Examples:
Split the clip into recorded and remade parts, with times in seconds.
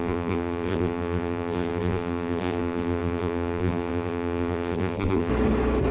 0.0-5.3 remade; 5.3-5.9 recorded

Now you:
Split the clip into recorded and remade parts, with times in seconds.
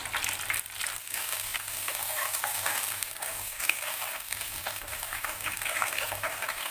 0.0-1.0 recorded; 1.0-6.7 remade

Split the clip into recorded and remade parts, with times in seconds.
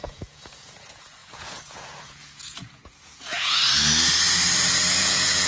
0.0-3.6 remade; 3.6-5.0 recorded; 5.0-5.5 remade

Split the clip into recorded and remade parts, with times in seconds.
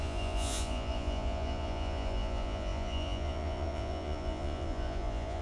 0.0-5.4 remade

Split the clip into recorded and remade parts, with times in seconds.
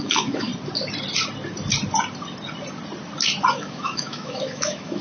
0.0-0.5 remade; 0.5-3.5 recorded; 3.5-5.0 remade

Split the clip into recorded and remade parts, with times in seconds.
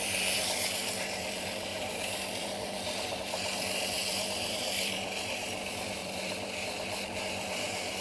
0.0-4.0 remade; 4.0-4.5 recorded; 4.5-8.0 remade